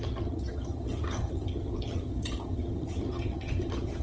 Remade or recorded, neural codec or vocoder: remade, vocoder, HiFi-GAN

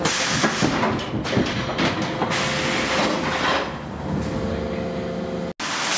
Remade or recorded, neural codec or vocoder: recorded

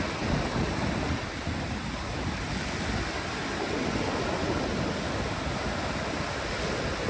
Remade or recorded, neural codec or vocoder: recorded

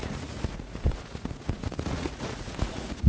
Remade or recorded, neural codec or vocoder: remade, vocoder, Vocos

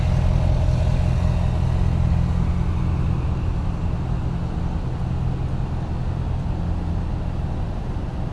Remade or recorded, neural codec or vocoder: recorded